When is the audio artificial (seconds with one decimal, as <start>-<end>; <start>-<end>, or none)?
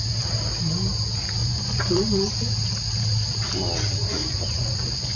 1.4-2.3; 4.2-5.2